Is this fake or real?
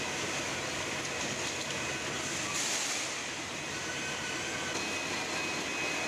real